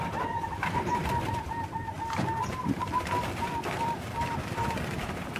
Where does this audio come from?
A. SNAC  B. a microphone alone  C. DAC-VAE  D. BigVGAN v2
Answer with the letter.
D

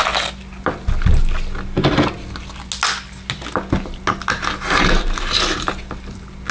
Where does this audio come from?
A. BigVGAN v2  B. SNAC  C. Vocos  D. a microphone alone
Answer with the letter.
D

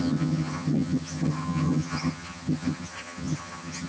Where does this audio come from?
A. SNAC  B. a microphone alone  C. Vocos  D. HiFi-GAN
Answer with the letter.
D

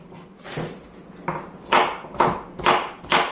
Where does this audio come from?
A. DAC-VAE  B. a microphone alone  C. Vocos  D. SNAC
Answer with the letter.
B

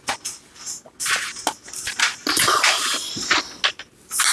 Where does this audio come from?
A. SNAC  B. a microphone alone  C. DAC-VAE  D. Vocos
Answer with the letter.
B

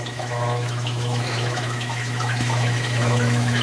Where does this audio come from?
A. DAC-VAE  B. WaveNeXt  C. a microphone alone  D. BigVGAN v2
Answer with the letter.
A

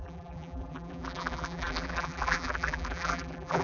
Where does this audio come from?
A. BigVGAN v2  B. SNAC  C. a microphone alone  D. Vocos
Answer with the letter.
A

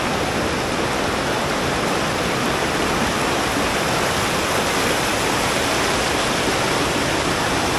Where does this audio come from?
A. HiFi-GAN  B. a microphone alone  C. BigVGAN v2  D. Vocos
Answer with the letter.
B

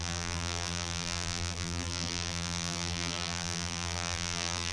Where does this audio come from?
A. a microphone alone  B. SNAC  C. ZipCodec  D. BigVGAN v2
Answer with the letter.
D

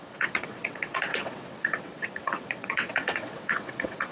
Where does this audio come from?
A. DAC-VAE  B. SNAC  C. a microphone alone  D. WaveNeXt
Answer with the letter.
D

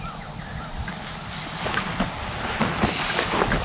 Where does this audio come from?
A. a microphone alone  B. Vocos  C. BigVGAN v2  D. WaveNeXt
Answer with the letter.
A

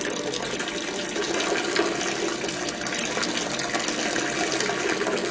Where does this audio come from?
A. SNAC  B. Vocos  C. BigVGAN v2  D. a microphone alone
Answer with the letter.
D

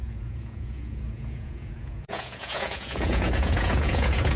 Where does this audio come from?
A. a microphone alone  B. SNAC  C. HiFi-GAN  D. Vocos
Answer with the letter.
D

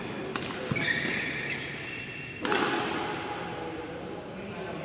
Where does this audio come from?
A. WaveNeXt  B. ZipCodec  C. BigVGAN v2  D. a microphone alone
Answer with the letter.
D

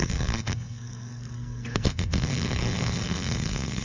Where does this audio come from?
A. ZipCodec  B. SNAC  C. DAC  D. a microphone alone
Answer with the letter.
B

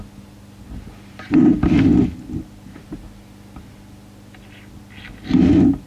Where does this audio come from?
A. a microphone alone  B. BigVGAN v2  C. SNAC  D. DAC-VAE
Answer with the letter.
A